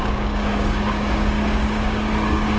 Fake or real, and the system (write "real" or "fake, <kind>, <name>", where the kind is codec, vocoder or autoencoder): fake, codec, DAC